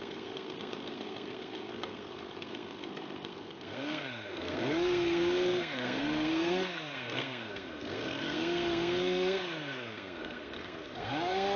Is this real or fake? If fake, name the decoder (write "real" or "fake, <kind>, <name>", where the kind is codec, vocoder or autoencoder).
fake, codec, SNAC